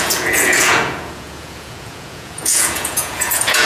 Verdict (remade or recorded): remade